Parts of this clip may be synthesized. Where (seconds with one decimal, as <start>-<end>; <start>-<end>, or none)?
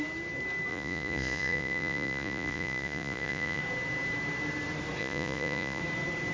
0.7-3.6; 5.0-5.8